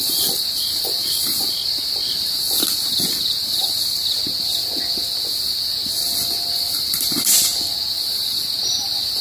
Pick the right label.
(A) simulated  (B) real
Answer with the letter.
B